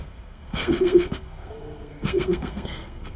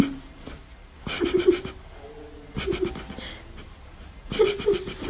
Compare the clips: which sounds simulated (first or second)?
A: first